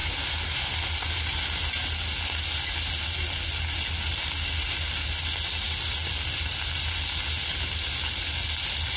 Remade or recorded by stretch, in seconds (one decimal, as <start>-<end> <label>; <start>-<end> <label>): 0.0-9.0 recorded

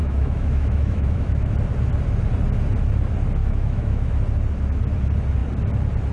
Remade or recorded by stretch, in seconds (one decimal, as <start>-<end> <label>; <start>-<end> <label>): 0.0-1.5 remade; 1.5-3.4 recorded; 3.4-4.2 remade; 4.2-6.1 recorded